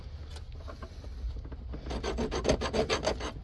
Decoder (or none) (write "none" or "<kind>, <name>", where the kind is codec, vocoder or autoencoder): none